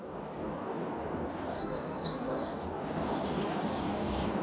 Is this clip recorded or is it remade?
remade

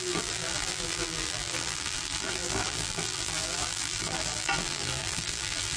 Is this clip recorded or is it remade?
remade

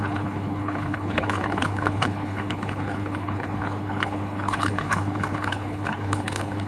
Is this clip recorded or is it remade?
remade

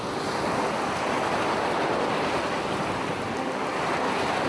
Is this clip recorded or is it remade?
recorded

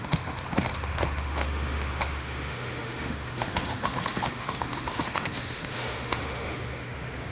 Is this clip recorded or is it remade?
remade